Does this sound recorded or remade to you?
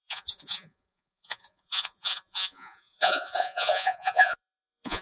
remade